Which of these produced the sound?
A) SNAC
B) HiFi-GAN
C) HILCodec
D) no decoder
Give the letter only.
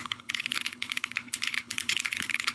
C